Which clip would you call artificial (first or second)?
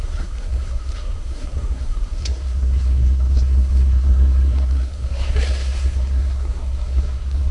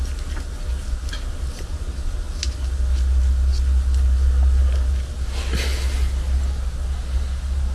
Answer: first